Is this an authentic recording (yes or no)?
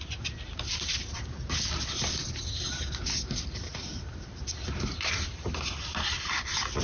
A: yes